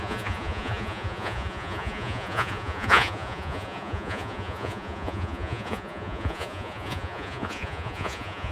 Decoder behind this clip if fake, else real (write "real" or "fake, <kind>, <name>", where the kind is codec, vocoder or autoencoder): fake, vocoder, Vocos